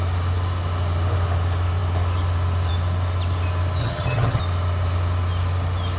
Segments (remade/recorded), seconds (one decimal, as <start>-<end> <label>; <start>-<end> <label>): 0.0-3.8 recorded; 3.8-4.4 remade; 4.4-6.0 recorded